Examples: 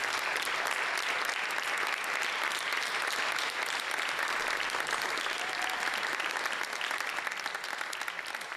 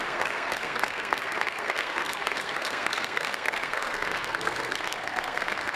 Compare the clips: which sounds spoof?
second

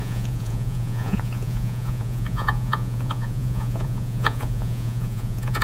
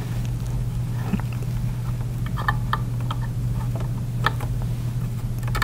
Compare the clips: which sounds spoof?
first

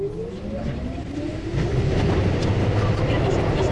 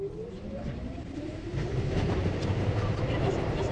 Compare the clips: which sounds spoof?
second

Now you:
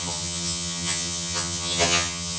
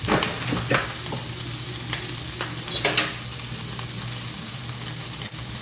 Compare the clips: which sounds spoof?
first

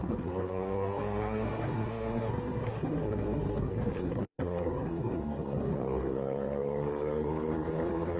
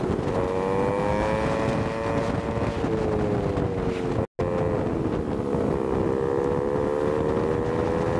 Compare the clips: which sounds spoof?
first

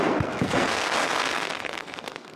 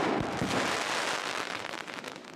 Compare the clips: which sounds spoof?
first